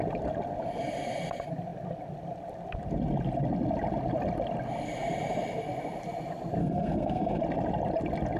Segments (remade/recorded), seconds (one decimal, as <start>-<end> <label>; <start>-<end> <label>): 0.0-6.6 recorded; 6.6-7.4 remade; 7.4-8.4 recorded